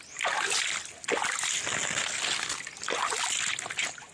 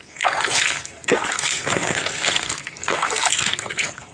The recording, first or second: first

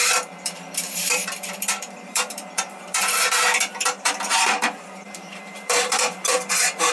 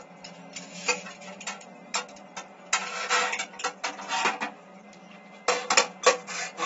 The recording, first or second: second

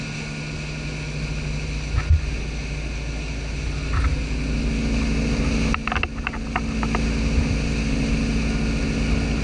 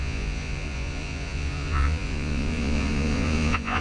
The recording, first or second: first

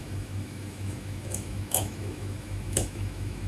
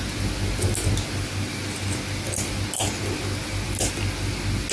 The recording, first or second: second